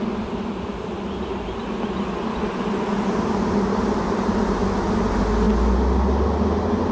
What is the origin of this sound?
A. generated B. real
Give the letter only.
B